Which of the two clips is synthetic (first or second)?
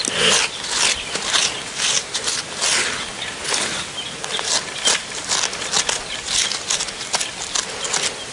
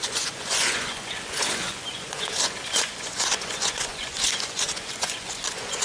second